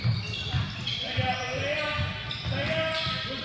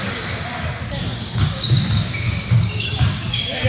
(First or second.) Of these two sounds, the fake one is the second